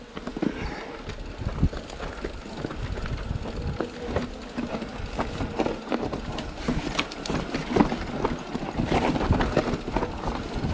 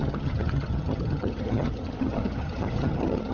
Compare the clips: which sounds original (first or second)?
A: first